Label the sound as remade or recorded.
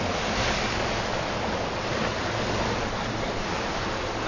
recorded